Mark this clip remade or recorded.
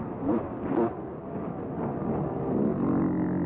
recorded